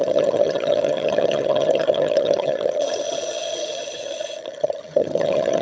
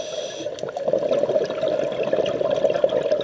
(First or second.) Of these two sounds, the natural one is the second